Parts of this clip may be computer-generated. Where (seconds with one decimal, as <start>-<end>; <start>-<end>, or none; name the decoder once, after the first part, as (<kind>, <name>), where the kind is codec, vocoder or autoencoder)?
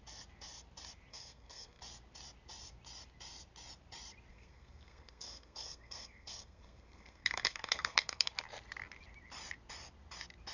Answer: 1.1-1.8 (codec, SNAC); 4.3-8.3